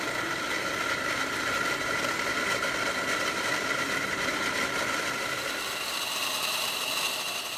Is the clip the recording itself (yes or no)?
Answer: no